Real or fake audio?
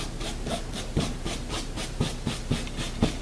real